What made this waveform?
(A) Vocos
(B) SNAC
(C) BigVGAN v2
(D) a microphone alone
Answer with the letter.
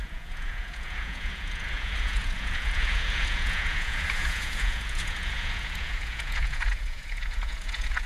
A